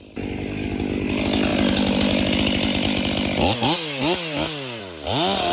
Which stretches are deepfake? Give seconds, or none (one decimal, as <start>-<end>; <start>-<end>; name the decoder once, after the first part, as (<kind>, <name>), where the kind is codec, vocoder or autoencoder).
none